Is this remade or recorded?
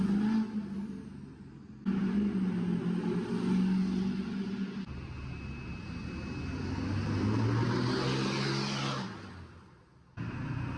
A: recorded